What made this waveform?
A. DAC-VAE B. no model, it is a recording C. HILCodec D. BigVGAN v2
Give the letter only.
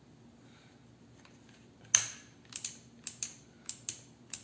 B